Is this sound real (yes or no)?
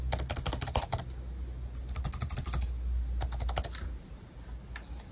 yes